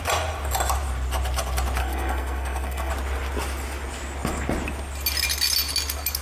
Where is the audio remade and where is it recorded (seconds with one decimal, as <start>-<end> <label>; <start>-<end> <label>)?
0.0-1.8 recorded; 1.8-2.9 remade; 2.9-6.2 recorded